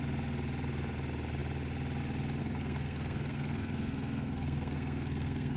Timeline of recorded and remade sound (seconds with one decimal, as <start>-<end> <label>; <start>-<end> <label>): 0.0-2.4 recorded; 2.4-5.6 remade

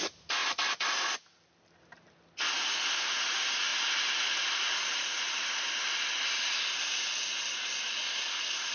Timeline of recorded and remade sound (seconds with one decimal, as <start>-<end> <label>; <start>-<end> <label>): 0.0-8.7 recorded